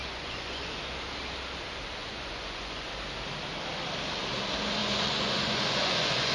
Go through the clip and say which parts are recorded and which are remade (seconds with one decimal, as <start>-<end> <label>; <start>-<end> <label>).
0.0-0.8 remade; 0.8-2.0 recorded; 2.0-2.9 remade; 2.9-4.8 recorded; 4.8-6.3 remade